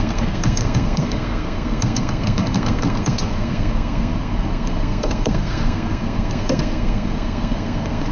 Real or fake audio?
fake